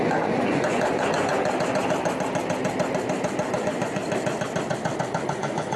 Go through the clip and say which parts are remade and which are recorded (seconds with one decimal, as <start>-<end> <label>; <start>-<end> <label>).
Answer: 0.0-1.4 remade; 1.4-3.6 recorded; 3.6-4.0 remade; 4.0-5.3 recorded; 5.3-5.8 remade